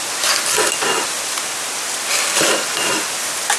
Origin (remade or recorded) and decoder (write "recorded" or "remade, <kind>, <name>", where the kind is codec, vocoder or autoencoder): recorded